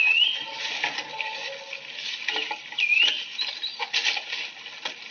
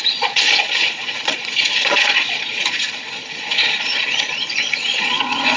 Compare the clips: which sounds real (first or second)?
first